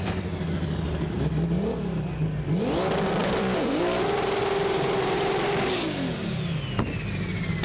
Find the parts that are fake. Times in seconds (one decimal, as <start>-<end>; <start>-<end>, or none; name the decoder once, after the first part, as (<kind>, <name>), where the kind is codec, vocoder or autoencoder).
3.2-5.4 (vocoder, BigVGAN v2)